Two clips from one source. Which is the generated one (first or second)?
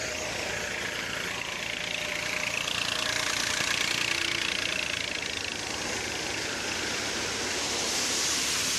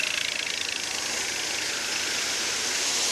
first